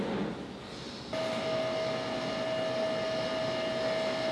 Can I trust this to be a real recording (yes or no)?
yes